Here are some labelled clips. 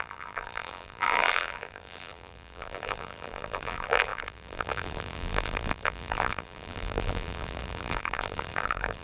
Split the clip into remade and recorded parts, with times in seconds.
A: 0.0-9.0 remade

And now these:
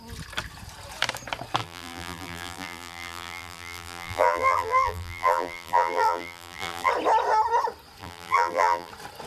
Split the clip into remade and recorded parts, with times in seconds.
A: 0.0-1.6 recorded; 1.6-6.9 remade; 6.9-8.0 recorded; 8.0-8.9 remade; 8.9-9.3 recorded

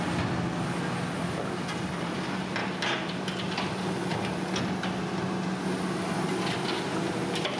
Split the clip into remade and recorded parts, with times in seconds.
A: 0.0-2.6 recorded; 2.6-3.2 remade; 3.2-7.6 recorded

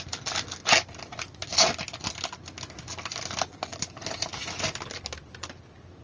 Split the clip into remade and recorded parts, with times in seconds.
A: 0.0-3.7 recorded; 3.7-4.6 remade; 4.6-6.0 recorded